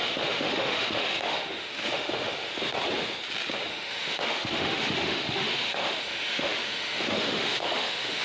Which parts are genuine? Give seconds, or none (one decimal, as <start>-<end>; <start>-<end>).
2.5-3.7

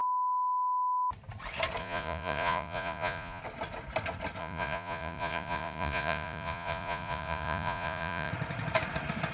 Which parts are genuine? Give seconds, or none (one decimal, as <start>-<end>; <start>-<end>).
0.0-1.8; 3.4-4.4; 8.3-9.3

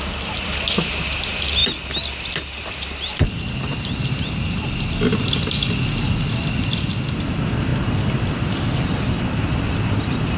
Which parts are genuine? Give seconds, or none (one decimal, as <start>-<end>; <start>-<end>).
0.0-10.4